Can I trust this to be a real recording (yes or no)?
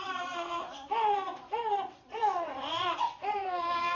no